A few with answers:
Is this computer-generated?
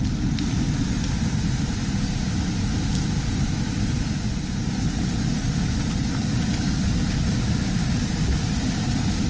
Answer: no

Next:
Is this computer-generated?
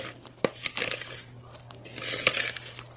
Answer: no